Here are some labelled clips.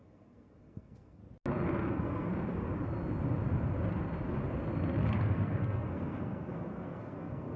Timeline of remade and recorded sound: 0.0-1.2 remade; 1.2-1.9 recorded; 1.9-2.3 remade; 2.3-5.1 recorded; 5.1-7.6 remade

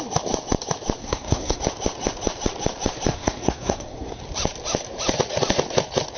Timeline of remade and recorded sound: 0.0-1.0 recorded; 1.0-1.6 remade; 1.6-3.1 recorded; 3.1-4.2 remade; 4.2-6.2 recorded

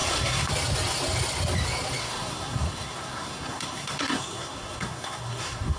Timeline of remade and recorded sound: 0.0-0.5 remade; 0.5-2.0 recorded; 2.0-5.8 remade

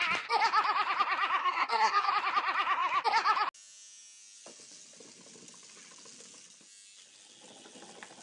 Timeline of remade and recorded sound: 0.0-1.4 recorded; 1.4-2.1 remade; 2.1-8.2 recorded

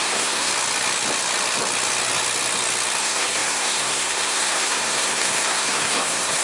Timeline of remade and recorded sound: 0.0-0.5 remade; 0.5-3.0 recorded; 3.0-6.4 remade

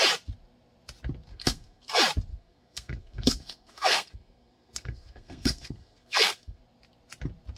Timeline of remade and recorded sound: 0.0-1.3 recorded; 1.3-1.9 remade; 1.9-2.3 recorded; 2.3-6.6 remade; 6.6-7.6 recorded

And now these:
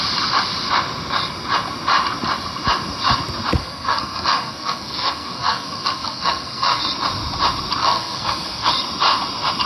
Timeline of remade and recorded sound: 0.0-3.6 recorded; 3.6-6.8 remade; 6.8-7.8 recorded; 7.8-8.7 remade; 8.7-9.7 recorded